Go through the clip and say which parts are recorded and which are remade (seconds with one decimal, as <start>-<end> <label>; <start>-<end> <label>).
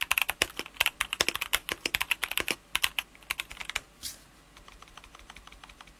0.0-6.0 recorded